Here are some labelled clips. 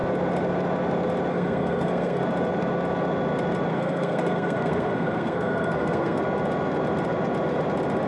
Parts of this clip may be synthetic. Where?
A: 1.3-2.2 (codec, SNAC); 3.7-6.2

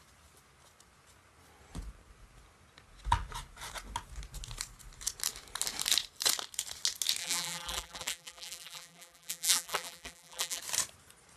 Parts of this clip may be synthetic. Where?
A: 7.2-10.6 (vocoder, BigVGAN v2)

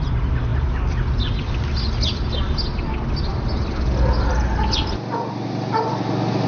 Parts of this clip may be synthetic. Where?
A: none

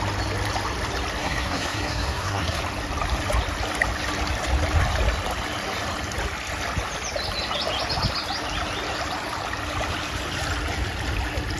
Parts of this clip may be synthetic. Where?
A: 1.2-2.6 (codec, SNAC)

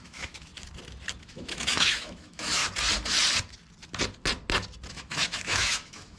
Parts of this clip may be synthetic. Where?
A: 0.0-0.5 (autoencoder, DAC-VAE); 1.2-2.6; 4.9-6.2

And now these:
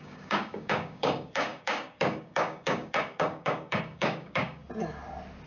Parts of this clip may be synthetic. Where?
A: 0.0-4.6 (codec, DAC)

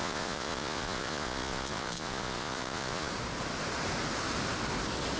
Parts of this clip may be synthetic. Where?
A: 0.0-3.1 (vocoder, Vocos)

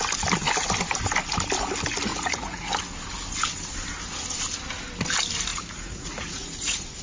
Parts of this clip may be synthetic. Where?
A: 2.1-2.8 (vocoder, Vocos); 5.5-7.0